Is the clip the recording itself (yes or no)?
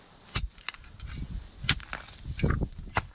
yes